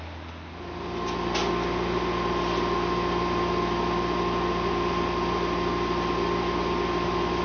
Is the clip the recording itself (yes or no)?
yes